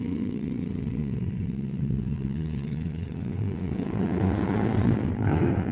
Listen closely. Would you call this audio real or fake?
fake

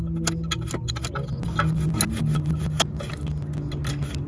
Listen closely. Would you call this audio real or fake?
real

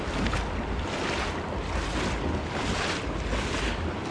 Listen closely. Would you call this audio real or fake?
real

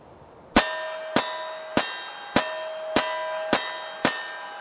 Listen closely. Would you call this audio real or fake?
real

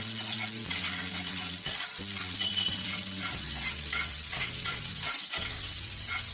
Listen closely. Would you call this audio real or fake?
fake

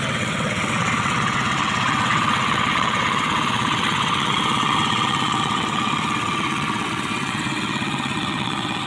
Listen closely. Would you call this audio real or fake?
fake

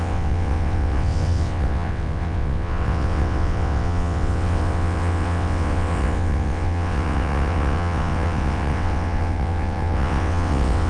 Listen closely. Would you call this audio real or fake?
fake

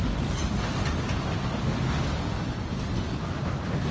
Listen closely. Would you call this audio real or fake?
real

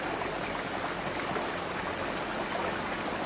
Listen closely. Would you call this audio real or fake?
real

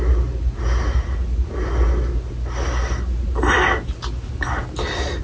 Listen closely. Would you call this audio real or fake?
real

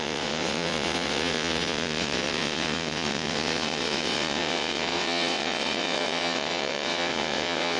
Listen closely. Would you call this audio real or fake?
fake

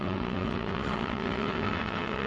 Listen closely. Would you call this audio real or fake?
fake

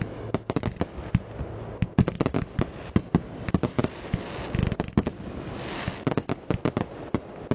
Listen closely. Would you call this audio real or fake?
real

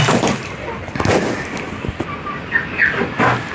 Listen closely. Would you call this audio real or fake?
real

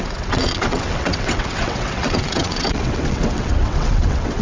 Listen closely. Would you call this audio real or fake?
fake